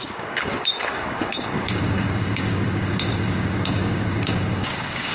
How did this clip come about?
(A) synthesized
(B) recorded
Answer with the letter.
A